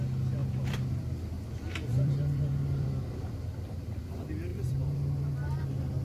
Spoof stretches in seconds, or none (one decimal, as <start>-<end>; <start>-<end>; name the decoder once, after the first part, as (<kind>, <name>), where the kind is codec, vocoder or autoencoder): 0.4-4.0 (vocoder, BigVGAN v2); 4.5-5.6